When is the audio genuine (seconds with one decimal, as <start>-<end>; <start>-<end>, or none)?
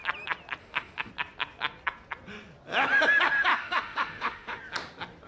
0.0-0.6; 1.1-3.5; 4.6-5.3